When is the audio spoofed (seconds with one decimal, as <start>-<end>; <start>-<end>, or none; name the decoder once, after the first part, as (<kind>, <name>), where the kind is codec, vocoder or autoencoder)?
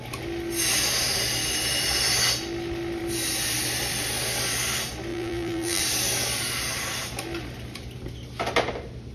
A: 5.1-5.8 (vocoder, BigVGAN v2)